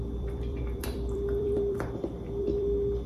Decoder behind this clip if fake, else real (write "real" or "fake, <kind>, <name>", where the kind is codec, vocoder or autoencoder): fake, vocoder, BigVGAN v2